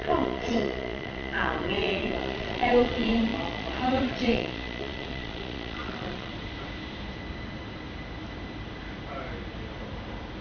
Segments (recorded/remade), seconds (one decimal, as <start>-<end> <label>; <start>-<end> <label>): 0.0-6.3 remade; 6.3-10.4 recorded